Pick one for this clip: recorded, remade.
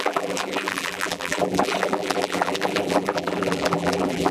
remade